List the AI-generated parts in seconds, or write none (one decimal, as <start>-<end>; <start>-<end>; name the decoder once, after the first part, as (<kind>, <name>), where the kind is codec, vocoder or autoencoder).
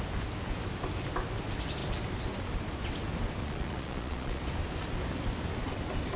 3.4-4.4 (vocoder, Vocos)